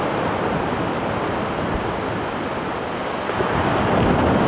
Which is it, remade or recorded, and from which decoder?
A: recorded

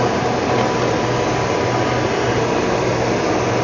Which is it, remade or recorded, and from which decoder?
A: recorded